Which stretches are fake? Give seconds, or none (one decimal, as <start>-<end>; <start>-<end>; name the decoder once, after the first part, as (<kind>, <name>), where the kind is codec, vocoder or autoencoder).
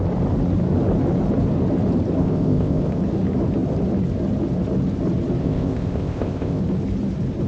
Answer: 2.2-3.0 (codec, ZipCodec); 5.4-6.6